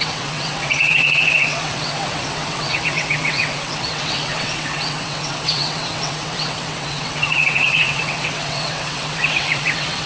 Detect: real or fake fake